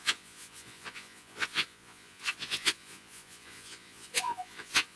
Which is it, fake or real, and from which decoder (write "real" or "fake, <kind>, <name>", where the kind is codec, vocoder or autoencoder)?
fake, vocoder, Vocos